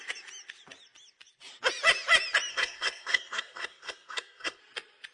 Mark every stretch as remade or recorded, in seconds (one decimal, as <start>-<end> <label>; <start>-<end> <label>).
0.0-2.5 recorded; 2.5-4.6 remade; 4.6-5.1 recorded